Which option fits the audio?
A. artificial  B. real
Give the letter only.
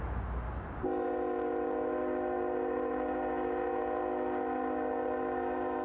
B